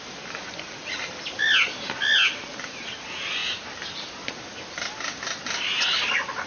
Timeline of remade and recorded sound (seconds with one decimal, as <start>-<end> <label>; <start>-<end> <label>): 0.0-6.5 recorded